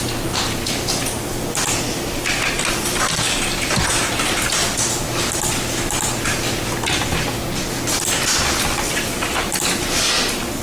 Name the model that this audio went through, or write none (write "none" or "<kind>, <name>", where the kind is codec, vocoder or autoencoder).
none